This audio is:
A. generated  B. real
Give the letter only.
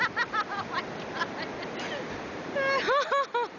B